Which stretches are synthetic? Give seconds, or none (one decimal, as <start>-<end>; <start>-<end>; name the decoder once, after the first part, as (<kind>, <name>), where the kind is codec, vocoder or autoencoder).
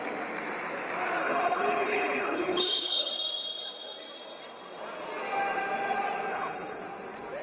1.2-3.1 (codec, HILCodec); 6.3-6.8